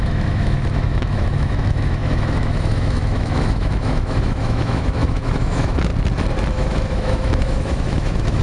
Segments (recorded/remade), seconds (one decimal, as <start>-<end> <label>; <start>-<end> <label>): 0.0-5.9 remade; 5.9-6.5 recorded; 6.5-8.4 remade